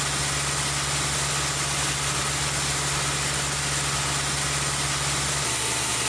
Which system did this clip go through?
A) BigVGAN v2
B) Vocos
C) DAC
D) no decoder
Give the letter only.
D